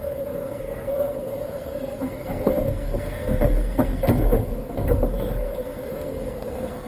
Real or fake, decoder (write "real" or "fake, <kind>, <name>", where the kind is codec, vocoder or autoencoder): fake, codec, SNAC